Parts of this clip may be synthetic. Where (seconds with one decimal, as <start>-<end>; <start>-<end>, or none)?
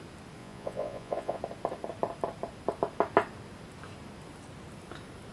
0.4-1.4